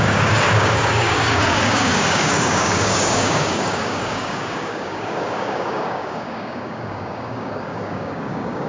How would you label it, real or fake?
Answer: fake